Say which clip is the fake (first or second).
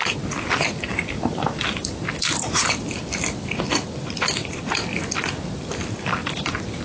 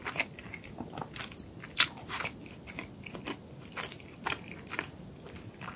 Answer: first